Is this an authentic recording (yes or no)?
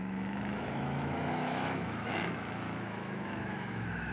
no